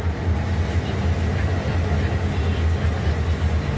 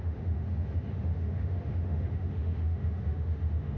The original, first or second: first